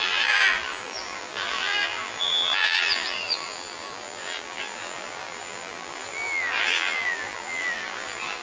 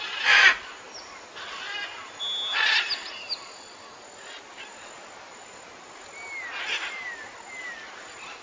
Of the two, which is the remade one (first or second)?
first